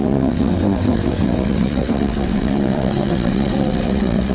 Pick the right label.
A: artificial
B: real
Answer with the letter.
A